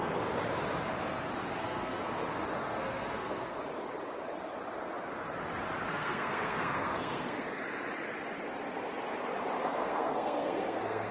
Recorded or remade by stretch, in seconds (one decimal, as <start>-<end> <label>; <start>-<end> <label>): 0.0-1.6 recorded; 1.6-2.2 remade; 2.2-2.6 recorded; 2.6-3.6 remade; 3.6-5.9 recorded; 5.9-7.6 remade; 7.6-9.6 recorded; 9.6-11.1 remade